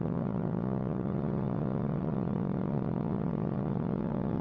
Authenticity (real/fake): fake